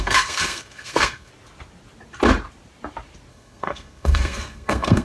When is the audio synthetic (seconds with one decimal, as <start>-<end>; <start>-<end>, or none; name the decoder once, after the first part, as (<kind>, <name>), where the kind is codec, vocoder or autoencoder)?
0.0-1.3 (codec, SNAC); 3.3-5.0